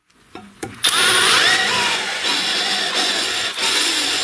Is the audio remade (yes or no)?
yes